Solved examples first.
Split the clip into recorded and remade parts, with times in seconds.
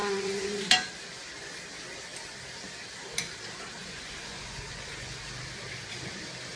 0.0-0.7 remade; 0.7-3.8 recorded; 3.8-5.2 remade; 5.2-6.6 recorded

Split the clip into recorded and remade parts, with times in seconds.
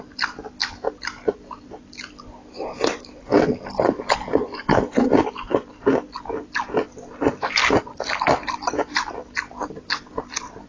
0.0-10.7 recorded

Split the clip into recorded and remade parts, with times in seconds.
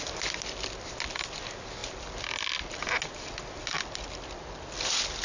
0.0-5.2 recorded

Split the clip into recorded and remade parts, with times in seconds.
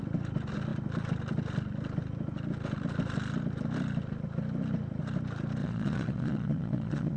0.0-5.6 recorded; 5.6-7.2 remade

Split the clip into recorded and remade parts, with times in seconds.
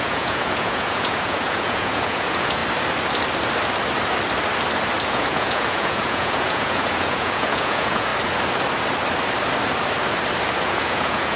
0.0-2.6 remade; 2.6-5.1 recorded; 5.1-8.1 remade; 8.1-10.6 recorded; 10.6-11.4 remade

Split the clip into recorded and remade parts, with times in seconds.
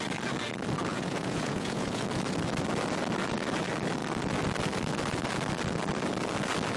0.0-0.9 recorded; 0.9-2.0 remade; 2.0-6.8 recorded